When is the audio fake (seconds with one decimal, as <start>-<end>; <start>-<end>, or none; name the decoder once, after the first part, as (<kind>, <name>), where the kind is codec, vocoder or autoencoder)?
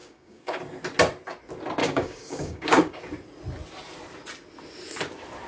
0.0-0.6 (codec, DAC); 1.8-3.0